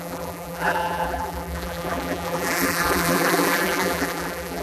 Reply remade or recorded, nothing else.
remade